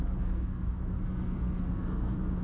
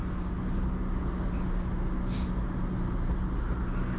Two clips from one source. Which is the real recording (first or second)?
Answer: second